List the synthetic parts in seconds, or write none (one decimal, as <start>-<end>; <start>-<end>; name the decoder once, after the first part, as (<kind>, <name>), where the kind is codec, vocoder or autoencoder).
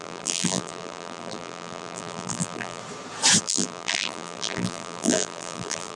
0.0-2.8 (vocoder, BigVGAN v2); 3.4-6.0